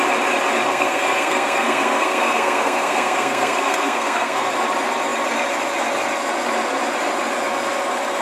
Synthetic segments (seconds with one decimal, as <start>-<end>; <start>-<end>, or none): 0.7-4.5